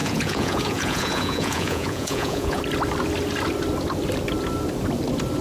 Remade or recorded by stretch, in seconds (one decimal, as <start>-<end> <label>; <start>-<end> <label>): 0.0-2.6 remade; 2.6-5.4 recorded